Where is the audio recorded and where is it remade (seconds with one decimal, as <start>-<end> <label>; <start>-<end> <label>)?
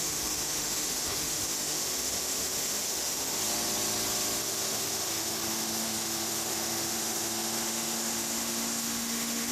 0.0-3.4 remade; 3.4-4.4 recorded; 4.4-9.5 remade